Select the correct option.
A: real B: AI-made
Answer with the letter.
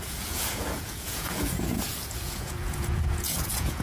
B